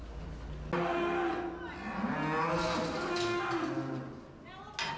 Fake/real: real